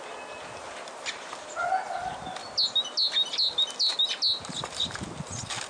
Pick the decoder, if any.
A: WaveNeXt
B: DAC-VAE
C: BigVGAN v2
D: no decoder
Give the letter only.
D